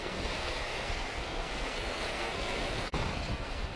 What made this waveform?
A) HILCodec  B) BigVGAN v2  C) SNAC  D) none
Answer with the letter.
C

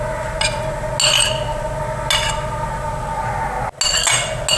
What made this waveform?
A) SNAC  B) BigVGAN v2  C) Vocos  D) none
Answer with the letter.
D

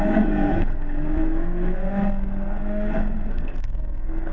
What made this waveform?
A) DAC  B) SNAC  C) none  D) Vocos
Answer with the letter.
B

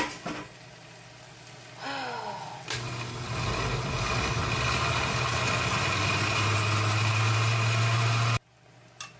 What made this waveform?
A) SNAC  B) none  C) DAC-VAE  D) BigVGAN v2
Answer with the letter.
B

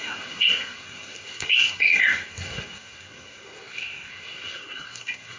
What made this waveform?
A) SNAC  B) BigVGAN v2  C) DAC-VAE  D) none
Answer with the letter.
A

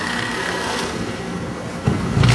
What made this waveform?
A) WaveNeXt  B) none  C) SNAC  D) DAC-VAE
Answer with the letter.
C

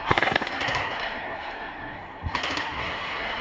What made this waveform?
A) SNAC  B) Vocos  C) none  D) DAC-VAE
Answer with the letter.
A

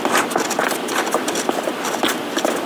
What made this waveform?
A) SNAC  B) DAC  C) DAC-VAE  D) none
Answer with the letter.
D